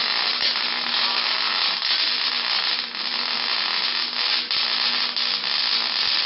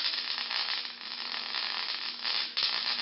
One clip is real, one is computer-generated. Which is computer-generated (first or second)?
second